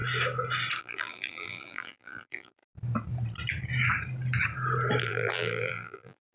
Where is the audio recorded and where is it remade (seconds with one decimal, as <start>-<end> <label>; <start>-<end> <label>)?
0.0-0.8 recorded; 0.8-2.6 remade; 2.6-5.0 recorded; 5.0-6.3 remade